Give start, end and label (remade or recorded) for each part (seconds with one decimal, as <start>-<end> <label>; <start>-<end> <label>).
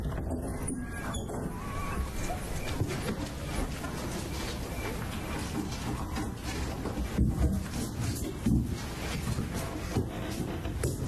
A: 0.0-11.1 recorded